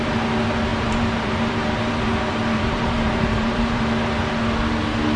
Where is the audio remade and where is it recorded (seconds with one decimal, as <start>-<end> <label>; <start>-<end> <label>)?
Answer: 0.0-0.7 recorded; 0.7-3.8 remade; 3.8-5.2 recorded